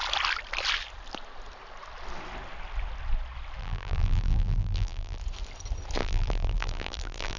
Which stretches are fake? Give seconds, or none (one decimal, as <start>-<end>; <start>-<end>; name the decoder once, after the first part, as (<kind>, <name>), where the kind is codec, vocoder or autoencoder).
3.6-5.2 (vocoder, BigVGAN v2); 6.0-7.4